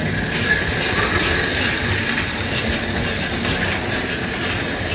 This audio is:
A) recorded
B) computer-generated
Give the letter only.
A